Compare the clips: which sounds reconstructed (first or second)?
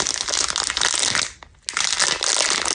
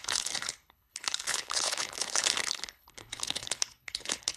second